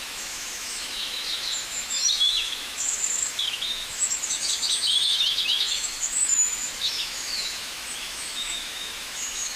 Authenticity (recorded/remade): remade